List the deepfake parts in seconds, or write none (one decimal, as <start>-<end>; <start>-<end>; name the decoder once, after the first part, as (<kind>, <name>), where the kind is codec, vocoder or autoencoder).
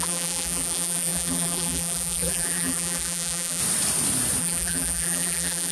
0.0-3.6 (vocoder, BigVGAN v2); 4.4-5.7